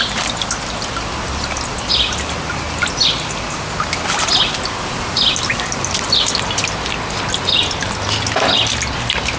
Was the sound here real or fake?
real